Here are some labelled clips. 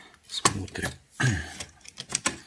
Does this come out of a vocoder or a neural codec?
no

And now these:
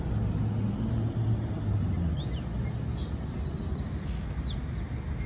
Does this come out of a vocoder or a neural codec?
no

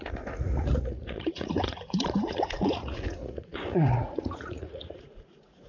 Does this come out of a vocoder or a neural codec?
yes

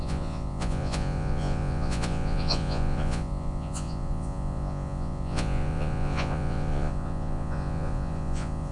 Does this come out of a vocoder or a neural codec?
yes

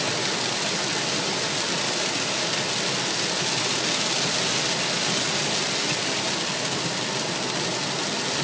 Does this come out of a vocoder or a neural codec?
no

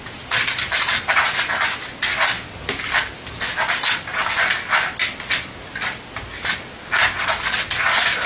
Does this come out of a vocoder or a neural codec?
no